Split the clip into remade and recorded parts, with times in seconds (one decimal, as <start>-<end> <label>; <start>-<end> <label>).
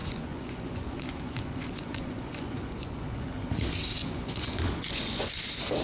0.0-3.5 remade; 3.5-4.0 recorded; 4.0-5.3 remade; 5.3-5.8 recorded